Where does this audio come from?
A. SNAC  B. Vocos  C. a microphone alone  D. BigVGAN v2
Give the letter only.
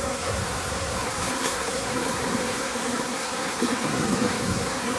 A